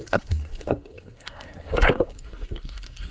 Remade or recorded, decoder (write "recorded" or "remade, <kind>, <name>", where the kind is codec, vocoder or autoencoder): remade, codec, SNAC